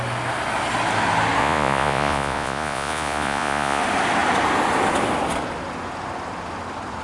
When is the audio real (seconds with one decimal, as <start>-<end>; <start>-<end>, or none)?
0.0-1.4; 3.8-7.0